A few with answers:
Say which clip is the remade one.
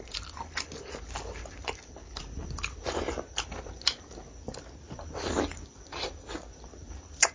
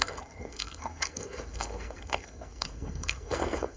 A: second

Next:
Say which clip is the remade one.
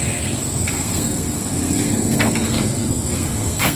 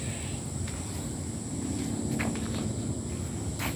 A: first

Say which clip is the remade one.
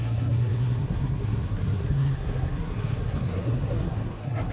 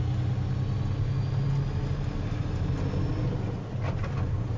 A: first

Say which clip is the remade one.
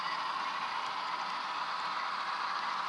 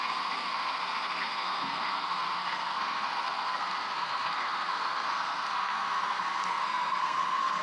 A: second